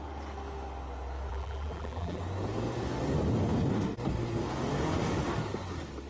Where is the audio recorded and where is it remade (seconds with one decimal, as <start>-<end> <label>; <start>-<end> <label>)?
0.0-1.3 recorded; 1.3-2.2 remade; 2.2-6.1 recorded